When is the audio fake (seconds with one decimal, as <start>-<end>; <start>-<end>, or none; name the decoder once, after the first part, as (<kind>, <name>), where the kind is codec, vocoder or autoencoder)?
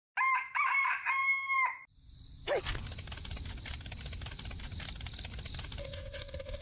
5.8-6.6 (codec, SNAC)